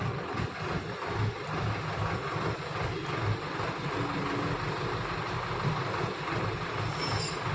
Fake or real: real